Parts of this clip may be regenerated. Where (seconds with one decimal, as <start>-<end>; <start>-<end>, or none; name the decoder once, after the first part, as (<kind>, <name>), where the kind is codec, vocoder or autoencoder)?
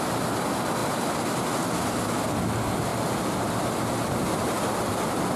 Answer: none